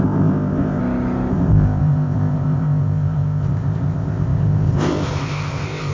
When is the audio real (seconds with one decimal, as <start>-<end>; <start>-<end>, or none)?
0.8-1.3